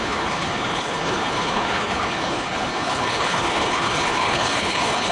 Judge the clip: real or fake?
fake